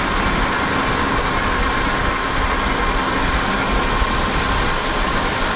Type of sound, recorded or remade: recorded